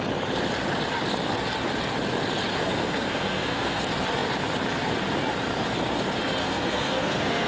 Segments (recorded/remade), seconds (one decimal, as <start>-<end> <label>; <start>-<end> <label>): 0.0-2.5 recorded; 2.5-3.8 remade; 3.8-6.4 recorded; 6.4-7.5 remade